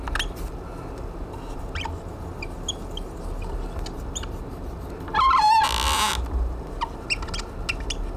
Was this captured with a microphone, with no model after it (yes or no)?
yes